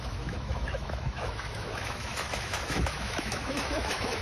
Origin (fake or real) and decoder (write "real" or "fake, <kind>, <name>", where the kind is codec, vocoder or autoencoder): fake, autoencoder, DAC-VAE